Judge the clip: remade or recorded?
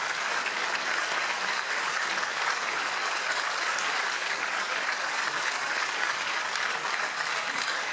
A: remade